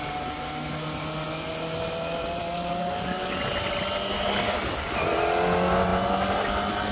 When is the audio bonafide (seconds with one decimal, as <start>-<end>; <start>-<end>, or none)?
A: 0.0-2.4; 3.4-6.9